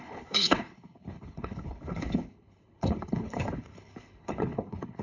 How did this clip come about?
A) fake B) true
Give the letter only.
A